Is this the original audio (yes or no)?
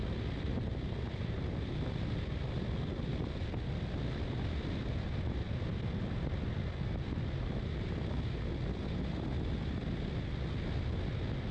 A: yes